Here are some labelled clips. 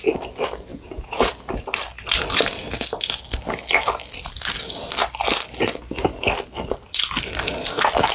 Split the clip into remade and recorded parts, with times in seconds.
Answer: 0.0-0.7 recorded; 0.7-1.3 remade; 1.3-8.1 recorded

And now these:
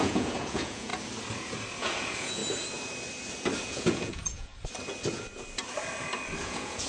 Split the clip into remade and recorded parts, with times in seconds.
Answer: 0.0-0.9 remade; 0.9-1.8 recorded; 1.8-2.4 remade; 2.4-3.6 recorded; 3.6-4.5 remade; 4.5-6.4 recorded; 6.4-6.9 remade

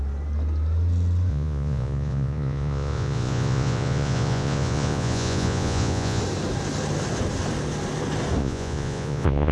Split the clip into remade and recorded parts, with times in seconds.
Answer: 0.0-1.3 recorded; 1.3-6.2 remade; 6.2-8.4 recorded; 8.4-9.5 remade

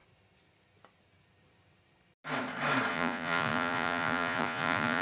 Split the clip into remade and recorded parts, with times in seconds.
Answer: 0.0-2.9 recorded; 2.9-5.0 remade